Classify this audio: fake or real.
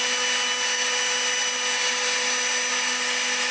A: real